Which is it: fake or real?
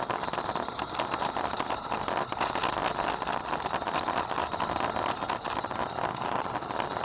real